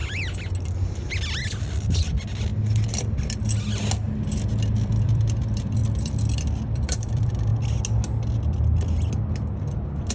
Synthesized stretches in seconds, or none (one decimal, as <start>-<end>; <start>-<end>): 1.4-2.5; 4.3-7.5